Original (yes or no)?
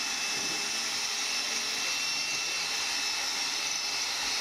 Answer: yes